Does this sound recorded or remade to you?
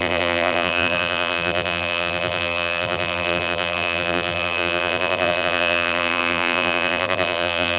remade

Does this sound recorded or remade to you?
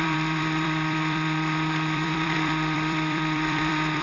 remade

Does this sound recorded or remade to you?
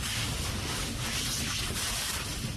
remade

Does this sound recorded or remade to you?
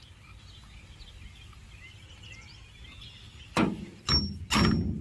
recorded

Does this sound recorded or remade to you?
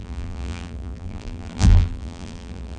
remade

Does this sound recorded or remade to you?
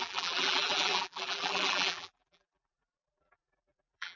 remade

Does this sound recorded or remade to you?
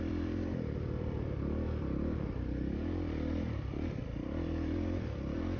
remade